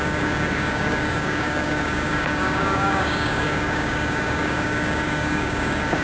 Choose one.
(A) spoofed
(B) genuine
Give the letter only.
A